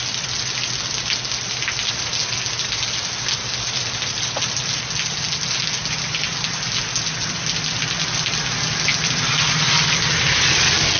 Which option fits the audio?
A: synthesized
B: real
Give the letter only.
B